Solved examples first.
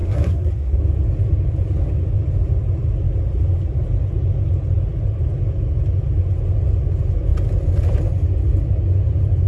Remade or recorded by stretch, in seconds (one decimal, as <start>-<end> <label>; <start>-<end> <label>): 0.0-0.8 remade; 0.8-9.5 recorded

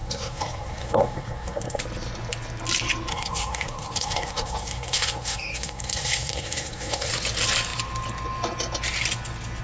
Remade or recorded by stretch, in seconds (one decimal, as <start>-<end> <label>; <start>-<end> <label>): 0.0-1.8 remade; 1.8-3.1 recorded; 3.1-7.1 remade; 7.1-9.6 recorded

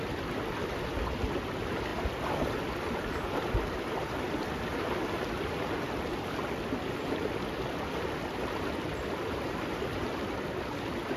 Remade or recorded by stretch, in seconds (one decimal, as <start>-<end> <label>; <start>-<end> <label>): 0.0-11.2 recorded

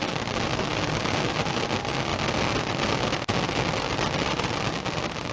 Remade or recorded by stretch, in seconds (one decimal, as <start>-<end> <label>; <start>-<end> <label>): 0.0-5.3 recorded

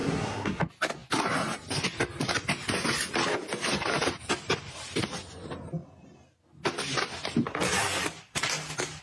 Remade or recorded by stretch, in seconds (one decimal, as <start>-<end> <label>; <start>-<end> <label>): 0.0-0.6 remade; 0.6-9.0 recorded